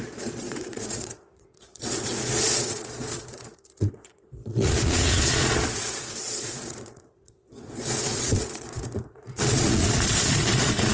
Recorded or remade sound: remade